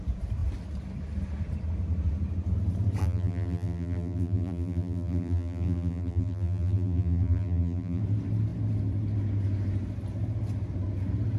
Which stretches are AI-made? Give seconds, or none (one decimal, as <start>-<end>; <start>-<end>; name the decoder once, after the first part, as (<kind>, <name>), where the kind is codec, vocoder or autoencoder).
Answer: 3.0-8.0 (vocoder, BigVGAN v2)